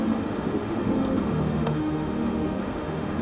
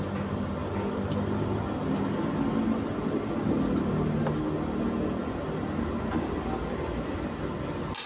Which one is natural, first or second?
second